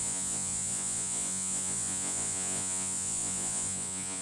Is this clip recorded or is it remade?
remade